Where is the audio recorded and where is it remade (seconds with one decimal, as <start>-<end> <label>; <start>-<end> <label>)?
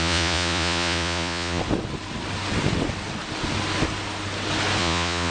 0.0-1.6 remade; 1.6-4.8 recorded; 4.8-5.3 remade